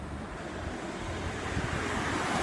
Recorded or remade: recorded